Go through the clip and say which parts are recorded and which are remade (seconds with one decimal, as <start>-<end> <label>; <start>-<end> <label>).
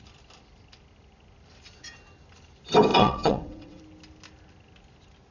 0.0-2.9 recorded; 2.9-3.8 remade; 3.8-5.3 recorded